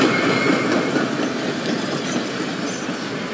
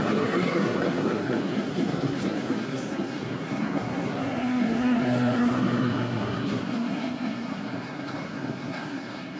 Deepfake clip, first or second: second